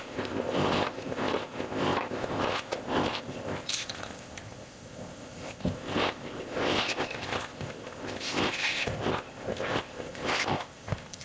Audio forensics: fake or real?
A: fake